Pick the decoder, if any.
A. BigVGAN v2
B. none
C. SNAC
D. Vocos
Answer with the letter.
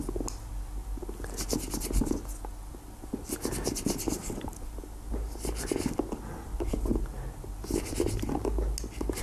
B